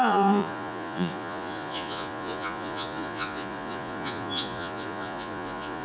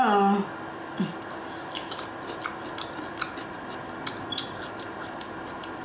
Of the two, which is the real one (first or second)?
second